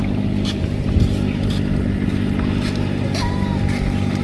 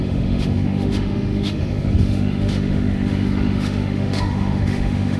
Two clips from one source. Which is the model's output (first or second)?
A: second